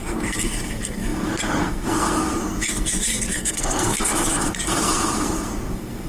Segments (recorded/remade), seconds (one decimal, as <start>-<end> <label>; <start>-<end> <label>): 0.0-6.1 remade